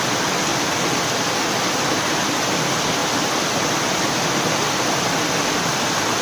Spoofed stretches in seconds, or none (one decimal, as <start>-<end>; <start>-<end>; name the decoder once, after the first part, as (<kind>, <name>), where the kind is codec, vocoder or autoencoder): 0.0-6.2 (vocoder, BigVGAN v2)

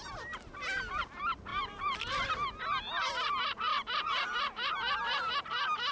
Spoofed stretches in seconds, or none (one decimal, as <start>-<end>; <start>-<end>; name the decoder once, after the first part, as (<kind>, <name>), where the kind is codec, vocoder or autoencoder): 1.5-2.3 (vocoder, BigVGAN v2); 3.7-5.3

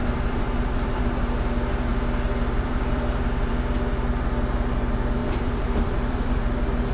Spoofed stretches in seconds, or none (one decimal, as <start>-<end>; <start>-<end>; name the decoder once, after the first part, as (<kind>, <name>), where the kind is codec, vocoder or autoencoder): 0.0-1.0 (vocoder, BigVGAN v2); 1.9-3.5; 5.2-6.4

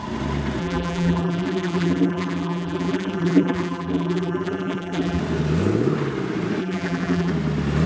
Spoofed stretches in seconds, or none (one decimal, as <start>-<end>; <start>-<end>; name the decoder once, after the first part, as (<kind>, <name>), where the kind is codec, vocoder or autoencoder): 0.6-5.2 (vocoder, BigVGAN v2); 6.6-7.3

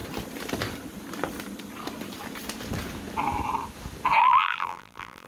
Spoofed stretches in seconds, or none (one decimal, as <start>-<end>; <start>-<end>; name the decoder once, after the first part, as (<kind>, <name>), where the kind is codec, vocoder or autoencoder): 4.2-5.3 (vocoder, BigVGAN v2)

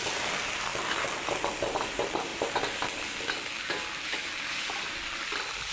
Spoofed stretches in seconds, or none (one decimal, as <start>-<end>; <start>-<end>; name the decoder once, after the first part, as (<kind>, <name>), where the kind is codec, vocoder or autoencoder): none